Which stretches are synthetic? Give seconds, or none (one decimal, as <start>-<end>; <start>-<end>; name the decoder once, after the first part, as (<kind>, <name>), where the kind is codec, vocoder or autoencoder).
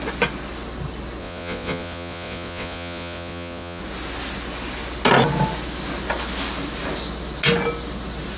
1.2-3.8 (vocoder, Vocos)